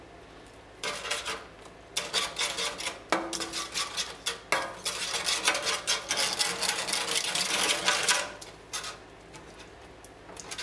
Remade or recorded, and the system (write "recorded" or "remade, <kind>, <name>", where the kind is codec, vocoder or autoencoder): recorded